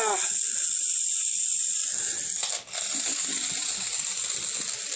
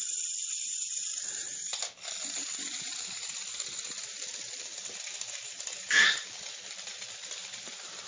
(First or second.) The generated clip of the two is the second